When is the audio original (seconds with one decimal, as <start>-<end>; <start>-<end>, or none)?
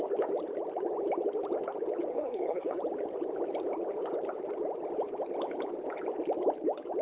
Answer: 0.0-2.1; 2.8-7.0